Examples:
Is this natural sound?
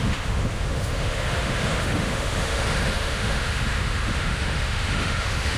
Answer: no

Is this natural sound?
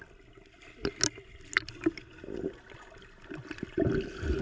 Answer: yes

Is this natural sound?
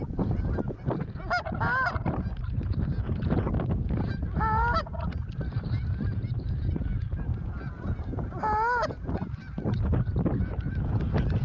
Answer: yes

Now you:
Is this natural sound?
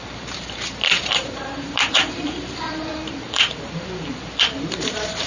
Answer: no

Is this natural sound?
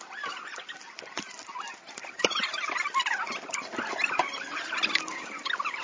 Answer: yes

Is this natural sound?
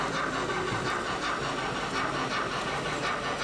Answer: yes